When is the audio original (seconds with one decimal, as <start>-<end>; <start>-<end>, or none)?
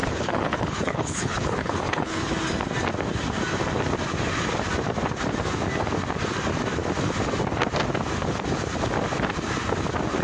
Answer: 2.3-10.2